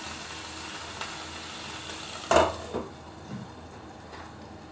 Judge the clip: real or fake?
real